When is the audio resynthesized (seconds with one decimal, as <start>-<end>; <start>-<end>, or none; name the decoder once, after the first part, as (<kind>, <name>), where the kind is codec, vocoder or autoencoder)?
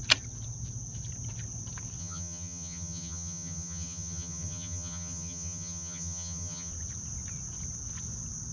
2.0-6.7 (vocoder, HiFi-GAN)